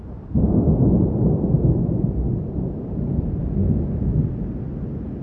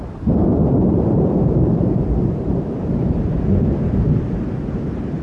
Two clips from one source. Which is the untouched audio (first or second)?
first